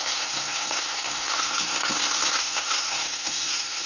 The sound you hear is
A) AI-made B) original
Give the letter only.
A